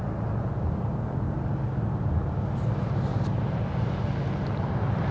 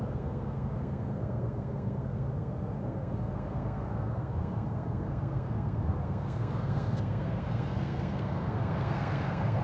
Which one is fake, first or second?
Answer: second